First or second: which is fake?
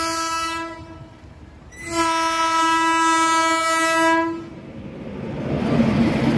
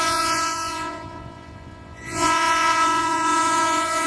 second